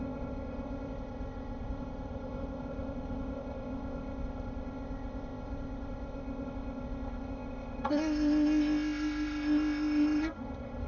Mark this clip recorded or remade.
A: remade